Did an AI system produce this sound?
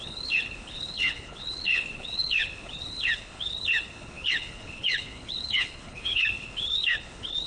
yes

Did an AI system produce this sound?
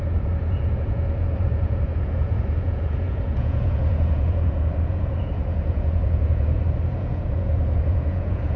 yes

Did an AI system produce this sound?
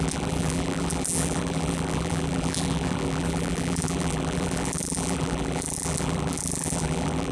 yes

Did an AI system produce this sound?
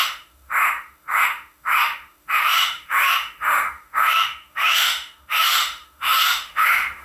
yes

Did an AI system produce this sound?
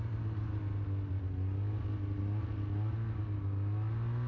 no